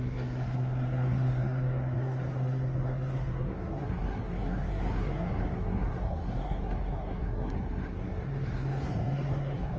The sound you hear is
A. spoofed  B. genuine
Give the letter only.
A